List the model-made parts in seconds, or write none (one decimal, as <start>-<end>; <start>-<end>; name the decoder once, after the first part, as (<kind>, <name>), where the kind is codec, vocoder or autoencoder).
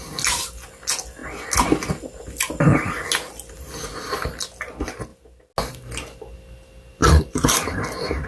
7.0-8.3 (vocoder, BigVGAN v2)